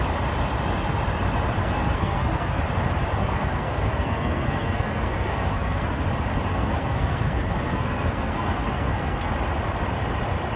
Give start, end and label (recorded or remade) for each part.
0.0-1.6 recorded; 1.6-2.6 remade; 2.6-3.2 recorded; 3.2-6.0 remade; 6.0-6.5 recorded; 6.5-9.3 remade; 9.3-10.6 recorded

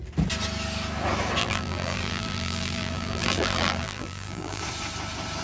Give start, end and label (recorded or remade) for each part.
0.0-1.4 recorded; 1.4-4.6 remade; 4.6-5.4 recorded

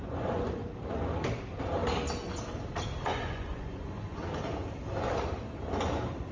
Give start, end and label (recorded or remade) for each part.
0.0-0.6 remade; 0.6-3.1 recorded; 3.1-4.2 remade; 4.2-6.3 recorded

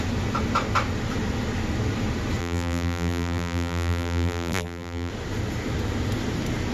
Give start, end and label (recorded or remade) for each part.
0.0-2.4 recorded; 2.4-5.1 remade; 5.1-6.7 recorded

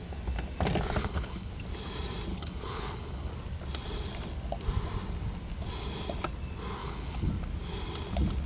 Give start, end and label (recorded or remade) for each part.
0.0-1.0 recorded; 1.0-1.5 remade; 1.5-2.3 recorded; 2.3-3.3 remade; 3.3-6.8 recorded; 6.8-7.3 remade; 7.3-8.5 recorded

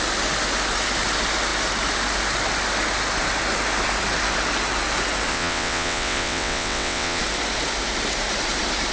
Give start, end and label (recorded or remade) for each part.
0.0-5.3 recorded; 5.3-7.2 remade; 7.2-8.9 recorded